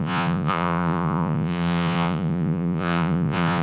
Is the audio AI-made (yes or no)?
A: yes